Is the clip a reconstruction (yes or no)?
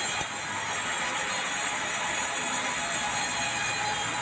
no